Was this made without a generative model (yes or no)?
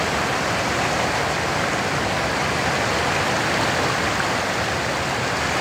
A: yes